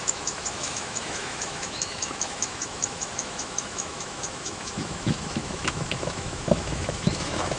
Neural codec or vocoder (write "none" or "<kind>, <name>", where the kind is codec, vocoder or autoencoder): autoencoder, DAC-VAE